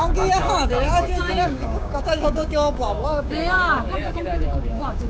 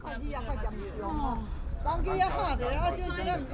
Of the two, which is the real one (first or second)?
second